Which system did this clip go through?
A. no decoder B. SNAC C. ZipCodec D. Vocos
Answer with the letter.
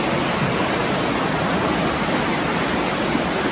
A